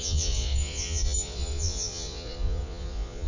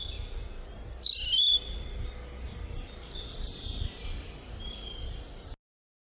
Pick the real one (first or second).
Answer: second